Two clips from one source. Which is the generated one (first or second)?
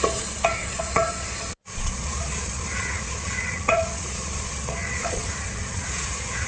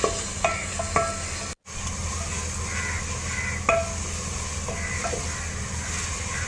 first